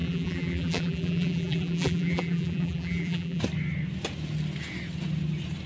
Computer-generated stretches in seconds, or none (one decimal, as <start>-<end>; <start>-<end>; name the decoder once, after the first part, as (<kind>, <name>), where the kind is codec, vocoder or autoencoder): 0.0-3.4 (vocoder, BigVGAN v2)